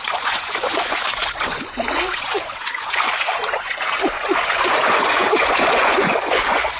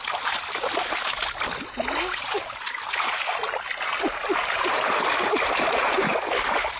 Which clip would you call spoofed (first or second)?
first